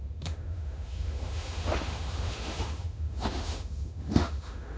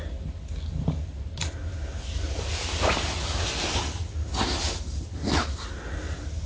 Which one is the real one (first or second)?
second